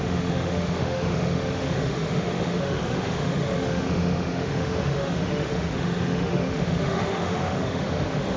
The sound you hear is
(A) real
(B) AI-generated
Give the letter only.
B